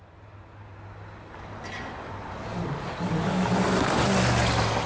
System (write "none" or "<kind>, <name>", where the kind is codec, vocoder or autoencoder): none